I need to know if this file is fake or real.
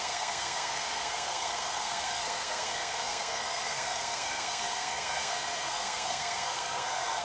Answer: fake